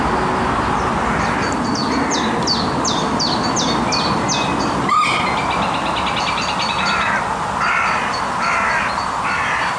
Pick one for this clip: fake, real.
real